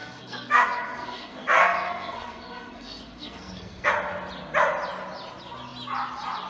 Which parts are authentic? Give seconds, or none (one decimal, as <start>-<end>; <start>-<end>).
3.9-6.5